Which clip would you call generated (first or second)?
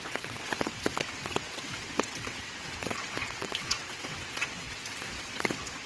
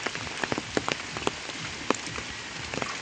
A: first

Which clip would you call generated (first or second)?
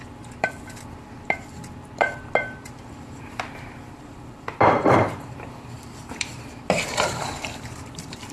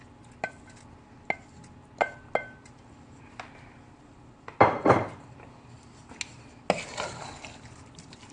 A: first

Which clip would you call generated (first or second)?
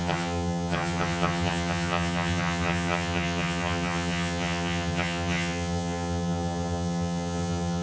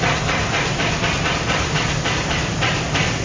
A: first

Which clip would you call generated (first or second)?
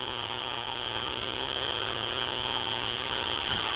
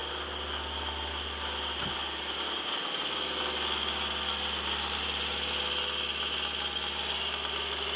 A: first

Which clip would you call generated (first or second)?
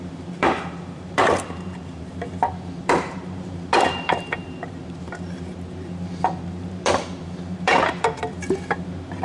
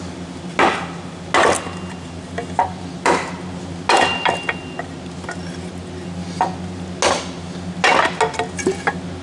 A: first